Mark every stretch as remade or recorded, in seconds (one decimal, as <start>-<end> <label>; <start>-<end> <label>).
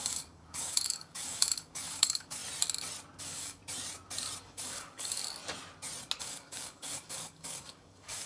0.0-2.4 remade; 2.4-3.2 recorded; 3.2-3.6 remade; 3.6-4.4 recorded; 4.4-5.2 remade; 5.2-6.2 recorded; 6.2-8.3 remade